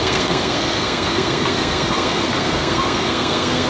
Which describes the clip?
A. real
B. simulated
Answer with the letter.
B